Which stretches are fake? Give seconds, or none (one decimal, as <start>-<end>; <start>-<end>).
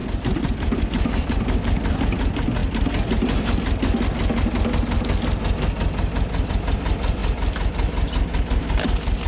0.0-2.6; 6.5-7.2; 8.5-9.3